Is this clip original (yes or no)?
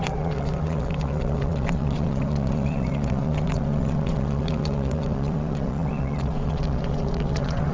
no